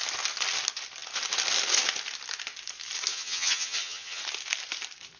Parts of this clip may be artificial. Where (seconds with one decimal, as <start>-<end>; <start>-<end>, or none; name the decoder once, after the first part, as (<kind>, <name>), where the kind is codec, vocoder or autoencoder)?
3.1-4.2 (vocoder, HiFi-GAN)